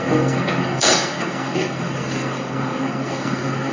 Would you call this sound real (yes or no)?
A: no